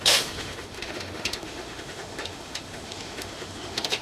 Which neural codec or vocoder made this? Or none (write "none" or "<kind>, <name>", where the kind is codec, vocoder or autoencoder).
autoencoder, DAC-VAE